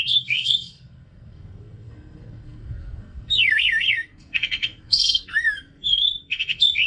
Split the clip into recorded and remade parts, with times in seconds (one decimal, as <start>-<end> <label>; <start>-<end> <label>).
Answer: 0.0-6.9 remade